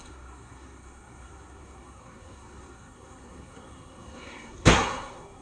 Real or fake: fake